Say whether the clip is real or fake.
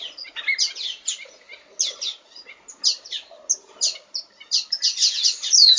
real